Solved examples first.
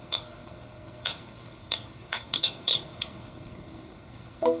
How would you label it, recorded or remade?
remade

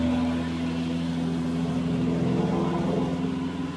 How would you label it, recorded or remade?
recorded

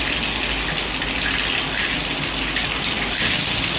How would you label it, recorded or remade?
recorded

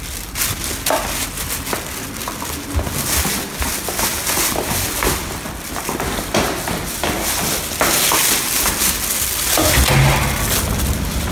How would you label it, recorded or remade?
recorded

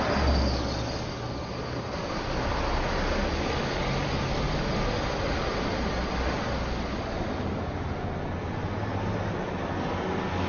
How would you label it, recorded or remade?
recorded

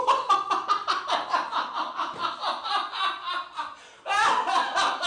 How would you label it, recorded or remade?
recorded